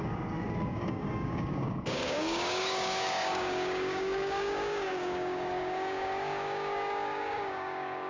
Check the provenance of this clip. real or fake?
fake